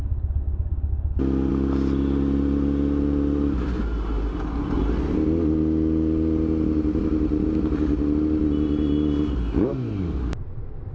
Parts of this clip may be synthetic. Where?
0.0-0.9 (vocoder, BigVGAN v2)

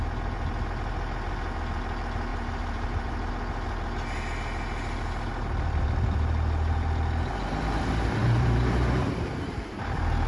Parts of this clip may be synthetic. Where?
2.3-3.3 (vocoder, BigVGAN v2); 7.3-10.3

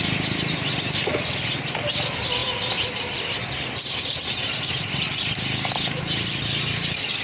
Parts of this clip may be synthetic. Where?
none

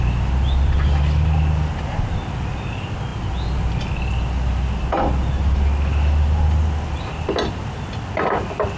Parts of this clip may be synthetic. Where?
none

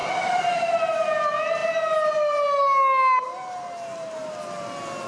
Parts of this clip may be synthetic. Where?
0.0-0.8 (vocoder, BigVGAN v2)

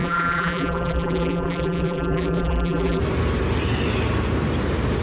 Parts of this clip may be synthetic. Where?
0.0-3.0 (vocoder, BigVGAN v2)